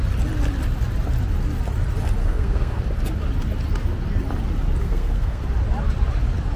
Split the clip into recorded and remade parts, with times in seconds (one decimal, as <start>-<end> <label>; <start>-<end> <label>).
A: 0.0-2.2 recorded; 2.2-2.8 remade; 2.8-4.8 recorded; 4.8-5.4 remade; 5.4-6.6 recorded